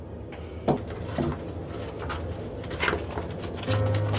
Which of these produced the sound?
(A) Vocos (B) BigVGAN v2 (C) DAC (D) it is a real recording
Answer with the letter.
D